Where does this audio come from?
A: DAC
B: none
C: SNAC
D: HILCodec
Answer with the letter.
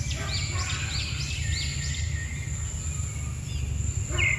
B